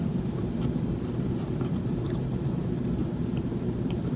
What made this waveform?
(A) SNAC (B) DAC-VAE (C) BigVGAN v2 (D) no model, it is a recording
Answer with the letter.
C